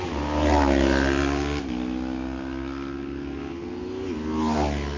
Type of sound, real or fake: real